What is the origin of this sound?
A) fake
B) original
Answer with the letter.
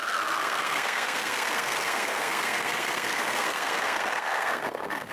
A